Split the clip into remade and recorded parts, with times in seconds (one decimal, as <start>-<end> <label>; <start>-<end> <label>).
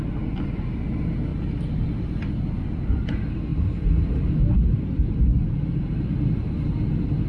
0.0-1.3 recorded; 1.3-2.4 remade; 2.4-3.5 recorded; 3.5-5.2 remade; 5.2-5.7 recorded; 5.7-7.3 remade